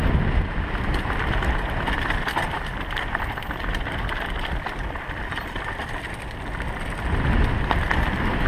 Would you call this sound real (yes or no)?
yes